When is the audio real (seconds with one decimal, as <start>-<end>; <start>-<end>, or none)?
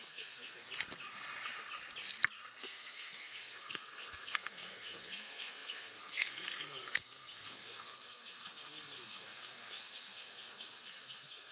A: 0.7-2.6